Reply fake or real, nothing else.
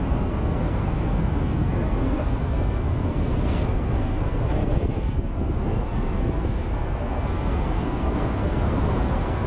fake